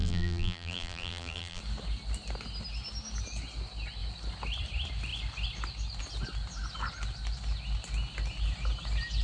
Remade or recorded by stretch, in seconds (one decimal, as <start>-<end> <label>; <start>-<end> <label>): 0.0-1.6 remade; 1.6-9.2 recorded